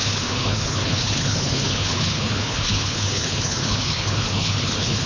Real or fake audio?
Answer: fake